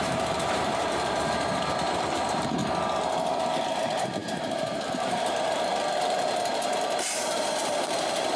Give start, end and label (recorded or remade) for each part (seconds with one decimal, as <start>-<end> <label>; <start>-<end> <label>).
0.0-2.6 remade; 2.6-3.4 recorded; 3.4-8.4 remade